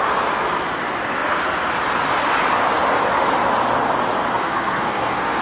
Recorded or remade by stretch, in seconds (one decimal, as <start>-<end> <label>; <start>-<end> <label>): 0.0-4.3 recorded; 4.3-5.4 remade